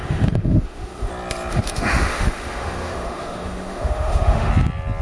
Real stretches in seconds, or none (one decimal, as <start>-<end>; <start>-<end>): 1.1-1.5; 4.5-5.0